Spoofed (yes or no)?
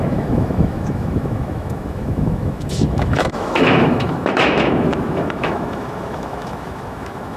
yes